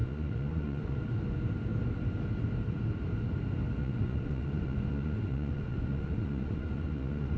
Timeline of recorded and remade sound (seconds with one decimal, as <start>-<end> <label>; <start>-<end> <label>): 0.0-1.0 remade; 1.0-3.8 recorded; 3.8-7.4 remade